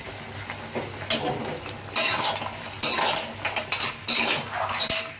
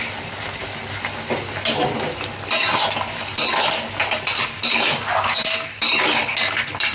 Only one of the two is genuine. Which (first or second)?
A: first